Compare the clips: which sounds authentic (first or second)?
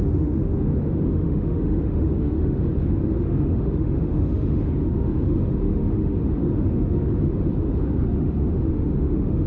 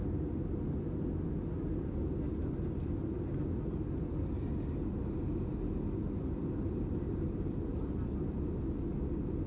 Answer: second